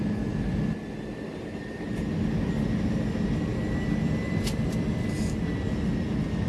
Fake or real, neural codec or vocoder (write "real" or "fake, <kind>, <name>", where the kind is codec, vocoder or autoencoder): real